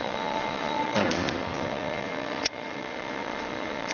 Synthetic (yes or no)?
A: yes